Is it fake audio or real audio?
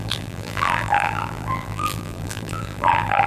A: fake